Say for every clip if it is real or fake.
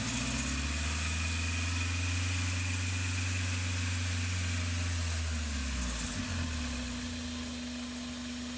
real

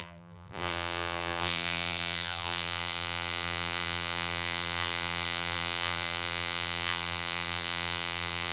fake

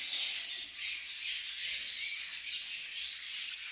real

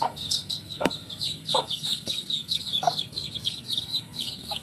fake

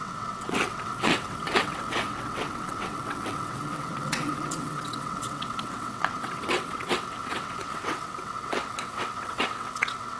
fake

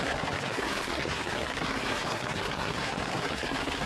fake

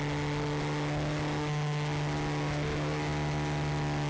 real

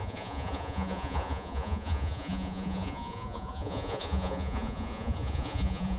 fake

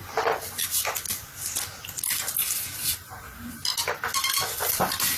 real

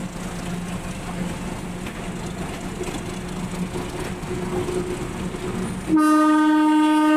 real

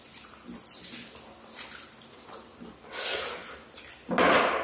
real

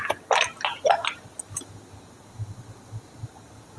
real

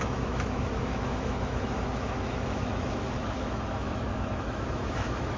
fake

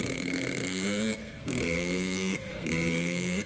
fake